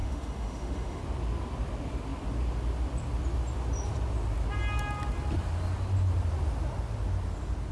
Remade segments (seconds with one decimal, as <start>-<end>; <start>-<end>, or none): 0.0-1.0